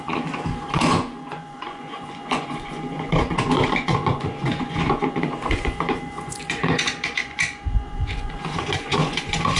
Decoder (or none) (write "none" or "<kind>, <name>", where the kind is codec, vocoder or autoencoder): vocoder, Vocos